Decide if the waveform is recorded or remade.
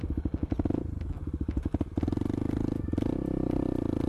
recorded